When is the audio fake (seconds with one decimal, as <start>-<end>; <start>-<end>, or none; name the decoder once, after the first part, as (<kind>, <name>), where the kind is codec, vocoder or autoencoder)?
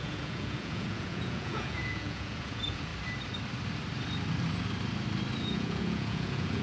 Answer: 0.0-2.9 (vocoder, Vocos); 5.4-6.6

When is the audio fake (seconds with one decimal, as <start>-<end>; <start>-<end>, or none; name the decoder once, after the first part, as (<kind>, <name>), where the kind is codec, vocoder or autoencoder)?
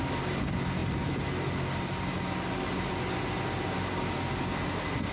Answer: none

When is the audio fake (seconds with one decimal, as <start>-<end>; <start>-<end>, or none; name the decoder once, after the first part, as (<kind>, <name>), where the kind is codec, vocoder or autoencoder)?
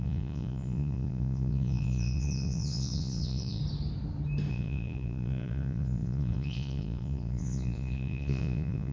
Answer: 0.0-3.6 (vocoder, Vocos); 4.5-8.9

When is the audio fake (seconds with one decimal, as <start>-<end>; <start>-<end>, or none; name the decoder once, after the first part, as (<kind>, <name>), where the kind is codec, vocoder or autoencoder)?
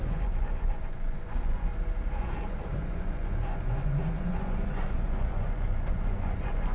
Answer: 0.0-1.7 (vocoder, Vocos); 2.2-6.7